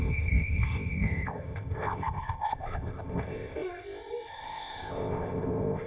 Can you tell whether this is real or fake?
fake